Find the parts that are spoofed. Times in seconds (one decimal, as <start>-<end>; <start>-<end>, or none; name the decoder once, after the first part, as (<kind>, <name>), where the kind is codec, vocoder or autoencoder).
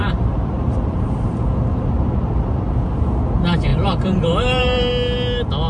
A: 0.0-1.9 (vocoder, BigVGAN v2); 3.7-4.9